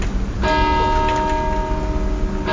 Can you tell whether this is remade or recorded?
recorded